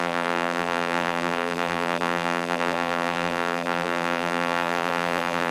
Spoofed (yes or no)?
yes